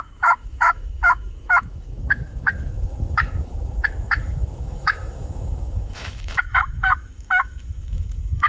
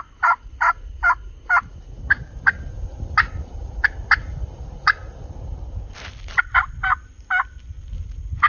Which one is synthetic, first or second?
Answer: first